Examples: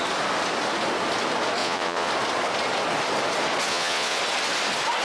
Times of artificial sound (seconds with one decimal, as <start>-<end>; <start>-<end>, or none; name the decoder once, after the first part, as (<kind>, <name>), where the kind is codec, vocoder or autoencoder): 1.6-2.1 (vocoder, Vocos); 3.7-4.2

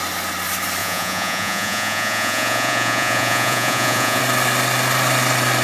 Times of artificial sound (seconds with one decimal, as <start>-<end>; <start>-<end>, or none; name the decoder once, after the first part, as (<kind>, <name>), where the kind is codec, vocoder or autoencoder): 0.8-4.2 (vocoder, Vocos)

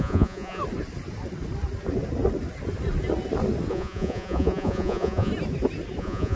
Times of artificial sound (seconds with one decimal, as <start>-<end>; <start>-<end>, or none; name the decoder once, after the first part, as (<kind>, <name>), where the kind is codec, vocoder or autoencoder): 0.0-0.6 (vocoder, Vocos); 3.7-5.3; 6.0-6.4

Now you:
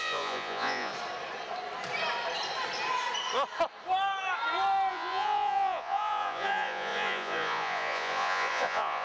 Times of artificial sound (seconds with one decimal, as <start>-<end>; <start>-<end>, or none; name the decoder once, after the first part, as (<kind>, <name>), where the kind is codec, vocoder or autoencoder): 0.0-0.9 (vocoder, Vocos); 4.9-9.0

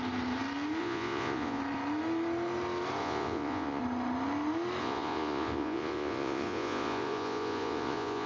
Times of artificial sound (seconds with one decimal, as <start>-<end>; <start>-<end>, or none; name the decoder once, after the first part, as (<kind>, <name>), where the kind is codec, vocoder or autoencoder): 0.8-1.6 (vocoder, Vocos); 3.0-3.8; 4.8-8.3

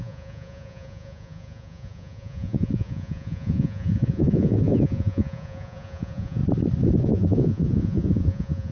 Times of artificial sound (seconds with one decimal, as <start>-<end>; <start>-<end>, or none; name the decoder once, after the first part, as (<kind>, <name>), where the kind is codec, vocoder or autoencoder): 0.0-6.4 (vocoder, Vocos); 7.0-8.7